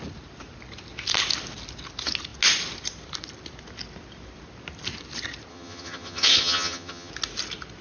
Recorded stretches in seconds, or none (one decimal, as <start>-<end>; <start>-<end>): 0.0-5.5; 7.1-7.8